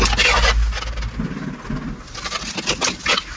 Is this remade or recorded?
recorded